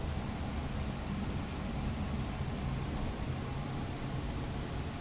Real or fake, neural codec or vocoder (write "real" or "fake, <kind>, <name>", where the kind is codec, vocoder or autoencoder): real